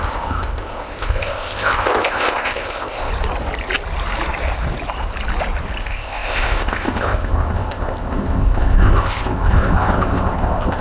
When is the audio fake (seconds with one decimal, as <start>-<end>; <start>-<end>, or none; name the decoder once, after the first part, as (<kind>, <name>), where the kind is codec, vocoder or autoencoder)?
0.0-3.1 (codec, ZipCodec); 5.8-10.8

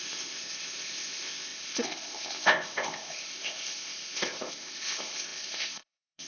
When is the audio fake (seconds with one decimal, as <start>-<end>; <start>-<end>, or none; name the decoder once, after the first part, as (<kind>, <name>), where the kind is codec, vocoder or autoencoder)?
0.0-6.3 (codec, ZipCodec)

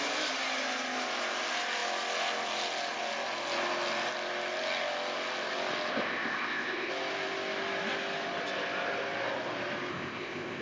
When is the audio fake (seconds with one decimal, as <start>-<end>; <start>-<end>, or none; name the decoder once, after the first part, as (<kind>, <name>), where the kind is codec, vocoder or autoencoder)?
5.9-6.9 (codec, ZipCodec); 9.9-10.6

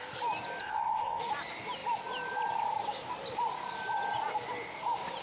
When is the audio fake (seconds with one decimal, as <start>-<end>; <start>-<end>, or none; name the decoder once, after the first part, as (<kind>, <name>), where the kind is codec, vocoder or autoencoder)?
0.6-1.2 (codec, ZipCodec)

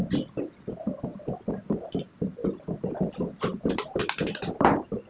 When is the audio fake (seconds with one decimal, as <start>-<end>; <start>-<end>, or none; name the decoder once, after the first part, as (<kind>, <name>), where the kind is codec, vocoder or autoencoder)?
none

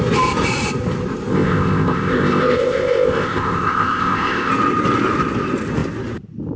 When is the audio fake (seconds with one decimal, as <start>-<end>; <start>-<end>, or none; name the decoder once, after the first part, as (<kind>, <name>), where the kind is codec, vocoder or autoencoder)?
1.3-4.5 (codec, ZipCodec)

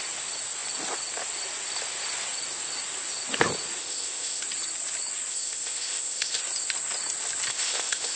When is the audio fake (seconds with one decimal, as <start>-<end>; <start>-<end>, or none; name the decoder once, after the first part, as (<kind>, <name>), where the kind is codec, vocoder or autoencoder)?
3.8-4.4 (codec, ZipCodec); 5.3-6.4; 7.5-8.2

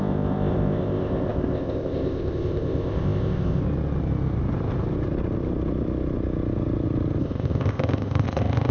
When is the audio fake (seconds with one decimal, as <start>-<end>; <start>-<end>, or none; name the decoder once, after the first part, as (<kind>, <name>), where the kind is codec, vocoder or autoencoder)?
0.0-3.6 (codec, ZipCodec); 7.2-8.7